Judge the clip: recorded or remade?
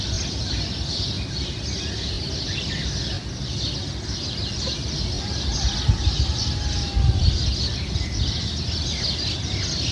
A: recorded